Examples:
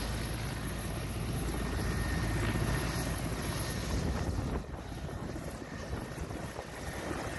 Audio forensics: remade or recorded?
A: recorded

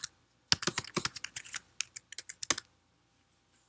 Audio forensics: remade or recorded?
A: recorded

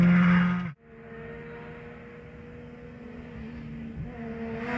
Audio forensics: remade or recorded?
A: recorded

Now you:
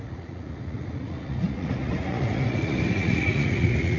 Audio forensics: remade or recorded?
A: remade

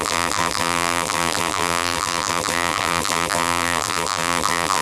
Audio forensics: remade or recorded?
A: remade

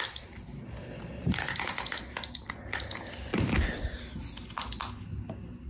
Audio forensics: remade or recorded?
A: recorded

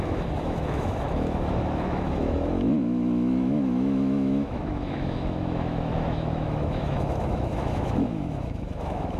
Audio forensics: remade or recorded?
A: remade